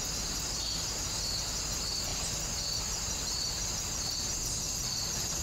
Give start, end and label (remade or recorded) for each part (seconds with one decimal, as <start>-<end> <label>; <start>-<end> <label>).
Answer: 0.0-5.4 recorded